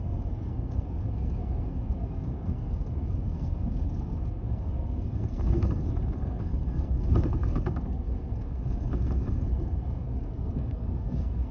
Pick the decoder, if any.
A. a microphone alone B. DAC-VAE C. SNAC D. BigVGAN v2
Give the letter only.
C